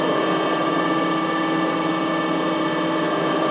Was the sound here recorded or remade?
recorded